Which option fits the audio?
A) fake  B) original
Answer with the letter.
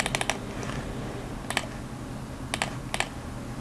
B